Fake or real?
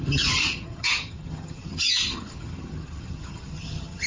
fake